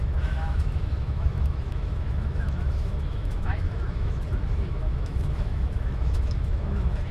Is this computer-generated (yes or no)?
yes